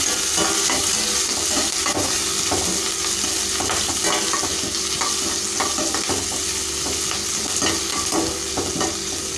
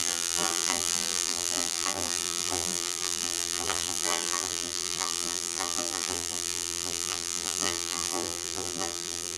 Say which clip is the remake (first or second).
second